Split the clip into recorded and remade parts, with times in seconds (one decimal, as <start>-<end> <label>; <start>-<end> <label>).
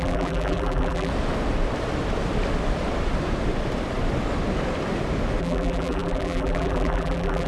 0.0-1.1 remade; 1.1-5.4 recorded; 5.4-7.5 remade